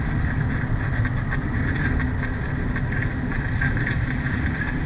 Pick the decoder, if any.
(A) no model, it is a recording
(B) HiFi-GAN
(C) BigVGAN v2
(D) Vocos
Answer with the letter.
A